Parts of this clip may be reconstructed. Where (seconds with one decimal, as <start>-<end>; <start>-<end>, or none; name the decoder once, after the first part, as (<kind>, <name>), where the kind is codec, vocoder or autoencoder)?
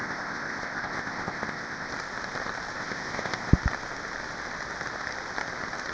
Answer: 0.0-1.9 (codec, ZipCodec); 2.8-3.5